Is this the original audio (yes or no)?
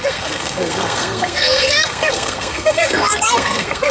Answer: no